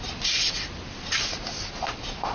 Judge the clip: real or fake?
real